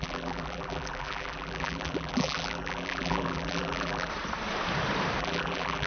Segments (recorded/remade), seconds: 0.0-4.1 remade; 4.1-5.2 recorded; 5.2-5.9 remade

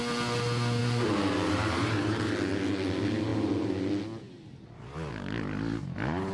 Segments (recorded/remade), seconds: 0.0-0.8 recorded; 0.8-2.3 remade; 2.3-6.3 recorded

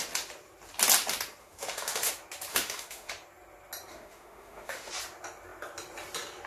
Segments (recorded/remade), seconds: 0.0-1.4 recorded; 1.4-2.1 remade; 2.1-2.5 recorded; 2.5-3.1 remade; 3.1-3.9 recorded; 3.9-4.9 remade; 4.9-6.5 recorded

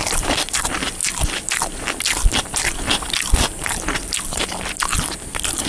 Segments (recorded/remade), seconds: 0.0-5.7 remade

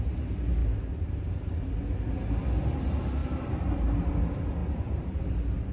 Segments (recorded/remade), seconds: 0.0-3.2 recorded; 3.2-4.1 remade; 4.1-4.6 recorded; 4.6-5.2 remade; 5.2-5.7 recorded

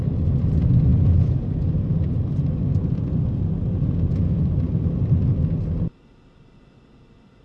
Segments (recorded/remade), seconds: 0.0-7.4 recorded

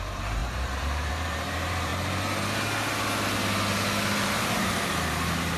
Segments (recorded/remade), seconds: 0.0-1.9 remade; 1.9-4.2 recorded; 4.2-5.6 remade

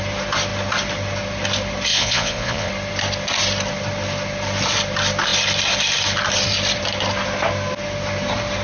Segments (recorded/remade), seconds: 0.0-1.9 recorded; 1.9-2.7 remade; 2.7-8.6 recorded